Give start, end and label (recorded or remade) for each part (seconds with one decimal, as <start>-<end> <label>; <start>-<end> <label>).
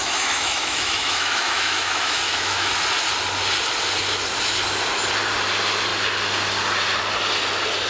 0.0-2.7 remade; 2.7-7.9 recorded